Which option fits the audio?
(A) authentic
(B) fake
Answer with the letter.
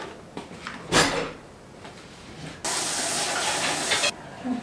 A